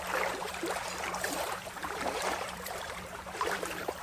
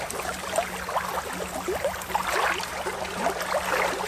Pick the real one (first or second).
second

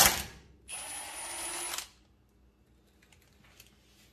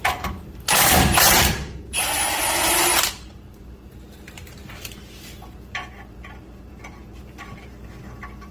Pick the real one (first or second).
first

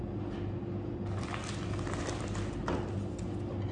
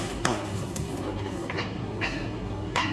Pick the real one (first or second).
first